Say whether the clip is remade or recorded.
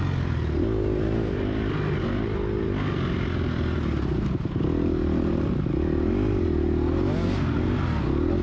recorded